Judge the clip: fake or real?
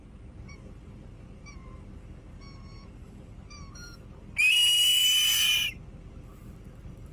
fake